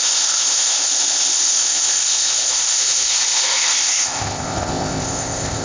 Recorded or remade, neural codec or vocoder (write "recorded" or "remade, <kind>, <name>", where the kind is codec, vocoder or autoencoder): remade, codec, ZipCodec